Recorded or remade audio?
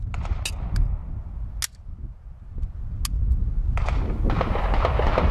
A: recorded